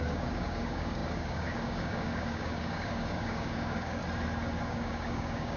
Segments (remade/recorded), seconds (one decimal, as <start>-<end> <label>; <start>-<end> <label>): 0.0-4.0 remade; 4.0-4.6 recorded; 4.6-5.6 remade